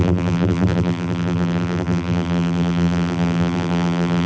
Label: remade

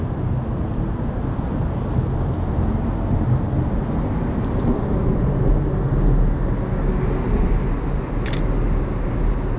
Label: recorded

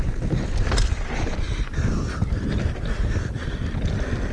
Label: recorded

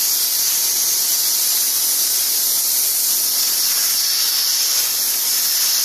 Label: recorded